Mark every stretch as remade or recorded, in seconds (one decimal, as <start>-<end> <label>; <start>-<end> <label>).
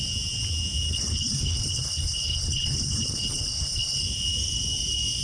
0.0-0.9 recorded; 0.9-4.0 remade; 4.0-5.2 recorded